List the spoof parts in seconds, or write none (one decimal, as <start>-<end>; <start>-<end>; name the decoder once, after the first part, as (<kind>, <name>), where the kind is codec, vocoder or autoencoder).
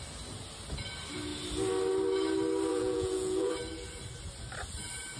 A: 2.7-3.5 (vocoder, Vocos)